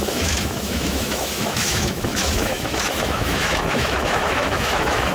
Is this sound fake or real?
fake